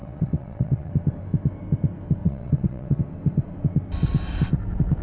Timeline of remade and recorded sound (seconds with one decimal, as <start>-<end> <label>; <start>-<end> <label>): 0.0-0.9 remade; 0.9-2.2 recorded; 2.2-3.0 remade; 3.0-5.0 recorded